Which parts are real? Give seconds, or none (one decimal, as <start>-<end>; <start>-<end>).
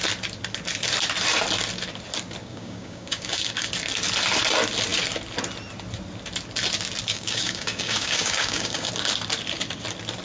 0.0-2.4; 3.7-7.1; 8.9-10.2